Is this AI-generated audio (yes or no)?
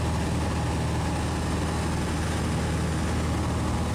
no